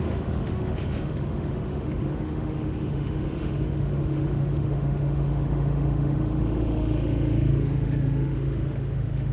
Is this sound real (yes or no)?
no